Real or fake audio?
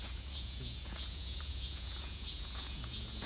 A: fake